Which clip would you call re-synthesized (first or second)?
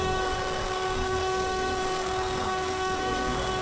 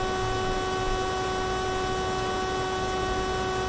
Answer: first